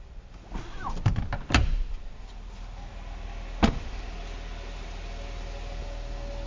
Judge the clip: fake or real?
real